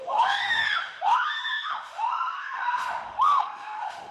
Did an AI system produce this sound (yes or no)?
yes